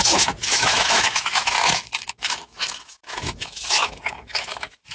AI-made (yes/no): yes